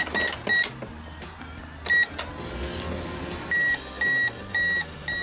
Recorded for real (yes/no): yes